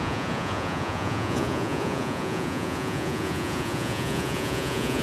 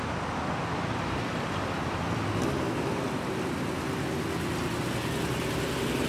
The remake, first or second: first